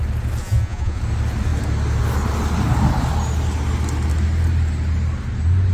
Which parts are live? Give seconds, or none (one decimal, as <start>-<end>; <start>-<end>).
0.0-0.4; 1.0-5.7